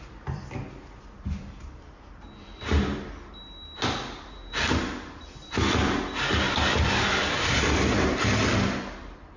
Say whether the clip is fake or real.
real